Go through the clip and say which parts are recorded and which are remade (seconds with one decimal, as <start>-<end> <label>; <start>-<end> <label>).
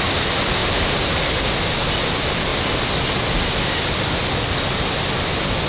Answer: 0.0-0.6 recorded; 0.6-1.5 remade; 1.5-5.7 recorded